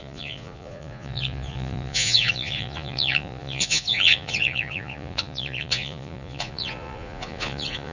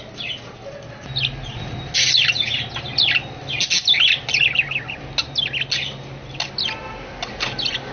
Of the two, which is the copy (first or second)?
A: first